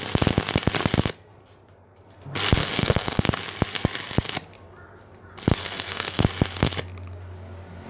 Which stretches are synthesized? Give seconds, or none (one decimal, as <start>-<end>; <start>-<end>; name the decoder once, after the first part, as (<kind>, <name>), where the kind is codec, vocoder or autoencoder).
2.6-3.2 (codec, SNAC); 5.6-6.2

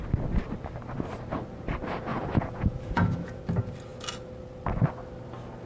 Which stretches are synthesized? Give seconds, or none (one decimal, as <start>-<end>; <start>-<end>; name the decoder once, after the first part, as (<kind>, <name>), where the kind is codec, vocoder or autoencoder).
2.1-3.4 (vocoder, Vocos)

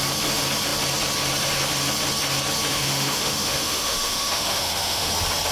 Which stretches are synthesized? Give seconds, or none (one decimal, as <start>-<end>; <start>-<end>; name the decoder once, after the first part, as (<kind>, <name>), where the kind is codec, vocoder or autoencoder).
2.7-5.1 (autoencoder, DAC-VAE)

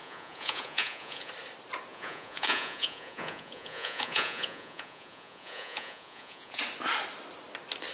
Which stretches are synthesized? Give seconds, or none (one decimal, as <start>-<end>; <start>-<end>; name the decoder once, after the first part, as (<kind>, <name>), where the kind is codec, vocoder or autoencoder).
0.0-1.3 (vocoder, Vocos); 1.9-6.6

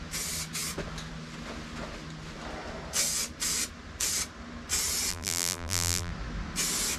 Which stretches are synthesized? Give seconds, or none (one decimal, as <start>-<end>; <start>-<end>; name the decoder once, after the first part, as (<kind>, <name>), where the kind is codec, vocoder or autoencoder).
5.1-6.1 (vocoder, BigVGAN v2)

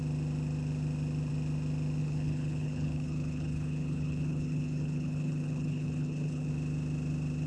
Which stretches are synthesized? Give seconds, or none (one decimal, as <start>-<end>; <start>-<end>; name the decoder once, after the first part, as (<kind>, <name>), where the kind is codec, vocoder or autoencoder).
2.0-6.5 (codec, HILCodec)

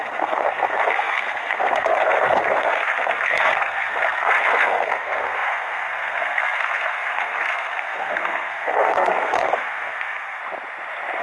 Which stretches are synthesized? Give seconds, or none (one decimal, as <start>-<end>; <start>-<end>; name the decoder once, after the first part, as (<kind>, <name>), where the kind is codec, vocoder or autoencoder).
0.0-10.4 (codec, SNAC)

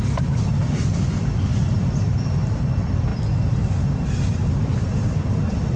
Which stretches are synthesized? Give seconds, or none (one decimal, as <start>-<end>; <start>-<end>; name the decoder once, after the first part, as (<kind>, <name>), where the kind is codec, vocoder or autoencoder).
none